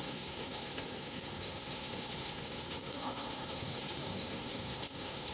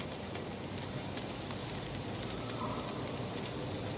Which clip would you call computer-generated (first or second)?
first